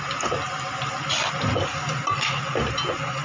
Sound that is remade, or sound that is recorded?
recorded